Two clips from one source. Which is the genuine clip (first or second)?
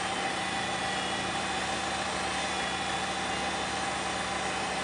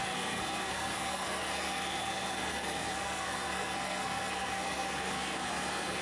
first